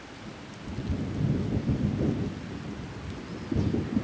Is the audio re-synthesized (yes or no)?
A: no